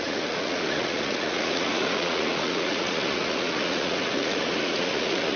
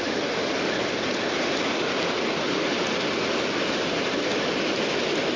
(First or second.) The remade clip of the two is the first